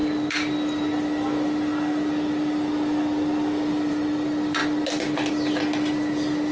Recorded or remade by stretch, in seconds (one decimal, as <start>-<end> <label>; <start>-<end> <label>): 0.0-6.5 recorded